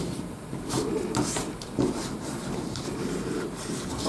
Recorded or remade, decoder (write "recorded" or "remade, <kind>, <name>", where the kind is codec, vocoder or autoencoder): remade, vocoder, BigVGAN v2